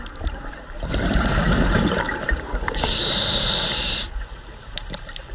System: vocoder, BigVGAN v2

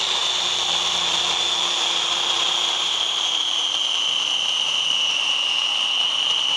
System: vocoder, BigVGAN v2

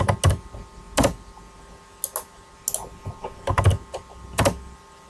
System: none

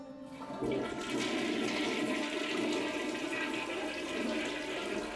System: none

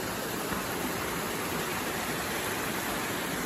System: none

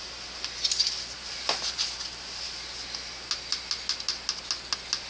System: none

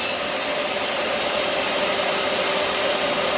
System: vocoder, BigVGAN v2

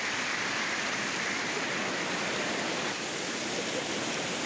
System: vocoder, BigVGAN v2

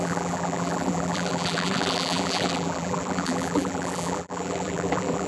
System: vocoder, BigVGAN v2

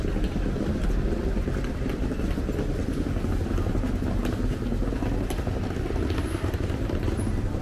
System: none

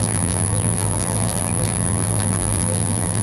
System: vocoder, BigVGAN v2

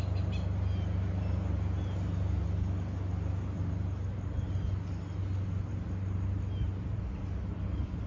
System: none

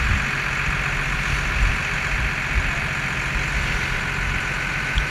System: none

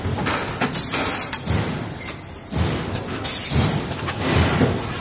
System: vocoder, BigVGAN v2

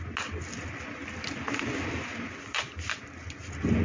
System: none